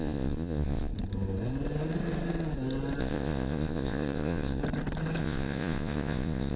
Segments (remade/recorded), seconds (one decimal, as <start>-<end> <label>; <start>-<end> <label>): 0.0-0.9 remade; 0.9-3.0 recorded; 3.0-4.6 remade; 4.6-5.2 recorded; 5.2-6.6 remade